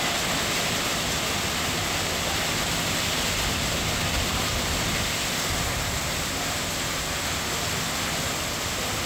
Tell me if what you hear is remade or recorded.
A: recorded